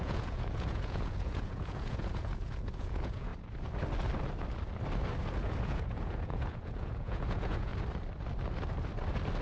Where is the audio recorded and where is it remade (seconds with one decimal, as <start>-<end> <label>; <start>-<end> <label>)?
0.0-3.3 remade; 3.3-5.4 recorded; 5.4-7.7 remade; 7.7-9.4 recorded

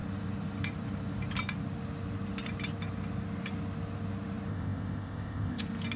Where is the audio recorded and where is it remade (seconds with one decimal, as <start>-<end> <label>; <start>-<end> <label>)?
0.0-4.5 recorded; 4.5-5.6 remade; 5.6-6.0 recorded

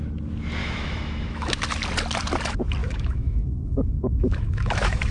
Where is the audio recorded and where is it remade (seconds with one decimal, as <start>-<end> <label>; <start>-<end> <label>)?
0.0-0.6 recorded; 0.6-1.6 remade; 1.6-2.8 recorded; 2.8-5.1 remade

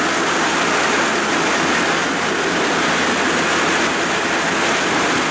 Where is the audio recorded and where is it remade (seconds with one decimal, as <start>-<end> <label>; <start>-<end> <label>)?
0.0-5.3 recorded

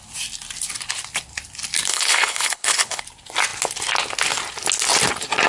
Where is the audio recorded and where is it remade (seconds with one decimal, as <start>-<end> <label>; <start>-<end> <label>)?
0.0-1.9 recorded; 1.9-3.0 remade; 3.0-5.5 recorded

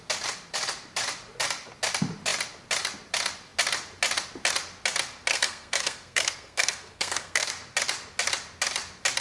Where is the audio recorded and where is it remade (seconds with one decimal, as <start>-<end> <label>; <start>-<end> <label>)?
0.0-5.3 recorded; 5.3-7.5 remade; 7.5-9.2 recorded

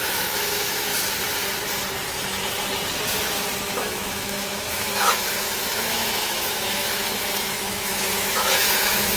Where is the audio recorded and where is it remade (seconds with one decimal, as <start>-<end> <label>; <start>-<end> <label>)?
0.0-0.9 remade; 0.9-3.8 recorded; 3.8-9.2 remade